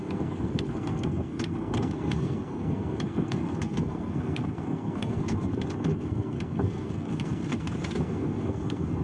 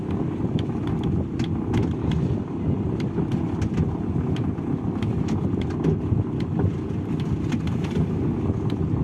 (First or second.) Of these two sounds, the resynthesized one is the first